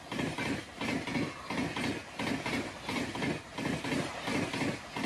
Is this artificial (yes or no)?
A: no